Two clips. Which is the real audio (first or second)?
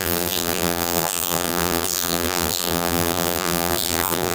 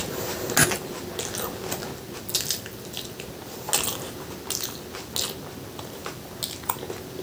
second